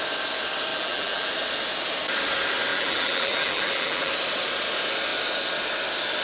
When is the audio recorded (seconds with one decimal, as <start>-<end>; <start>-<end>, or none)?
0.0-0.7; 1.3-2.7; 4.1-6.2